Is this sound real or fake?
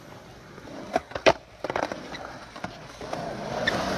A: real